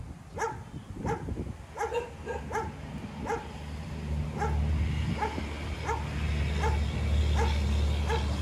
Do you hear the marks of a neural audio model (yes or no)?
no